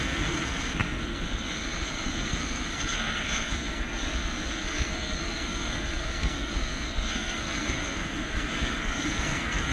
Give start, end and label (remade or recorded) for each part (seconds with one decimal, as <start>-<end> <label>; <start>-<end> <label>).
0.0-9.7 remade